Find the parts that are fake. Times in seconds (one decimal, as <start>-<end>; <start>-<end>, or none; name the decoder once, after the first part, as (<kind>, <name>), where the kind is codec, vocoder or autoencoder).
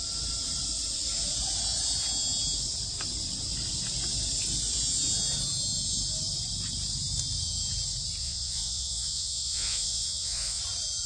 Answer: 8.2-10.6 (vocoder, Vocos)